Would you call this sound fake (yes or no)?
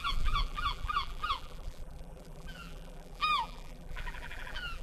yes